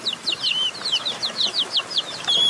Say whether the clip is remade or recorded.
remade